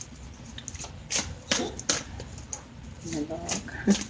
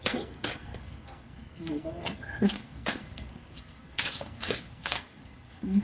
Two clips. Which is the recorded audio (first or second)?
first